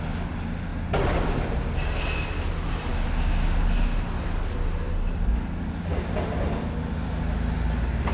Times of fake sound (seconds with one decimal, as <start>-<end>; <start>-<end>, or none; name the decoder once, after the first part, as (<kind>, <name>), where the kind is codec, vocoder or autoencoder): none